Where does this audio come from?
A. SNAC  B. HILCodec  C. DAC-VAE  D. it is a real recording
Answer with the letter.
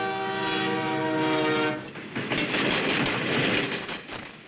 D